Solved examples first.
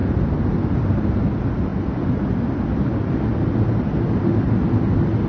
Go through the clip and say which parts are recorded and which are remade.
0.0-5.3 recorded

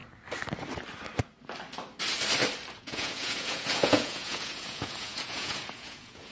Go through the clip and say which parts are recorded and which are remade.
0.0-2.8 recorded; 2.8-6.3 remade

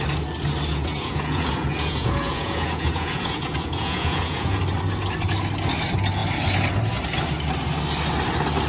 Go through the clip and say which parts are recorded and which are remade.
0.0-0.7 recorded; 0.7-4.6 remade; 4.6-8.7 recorded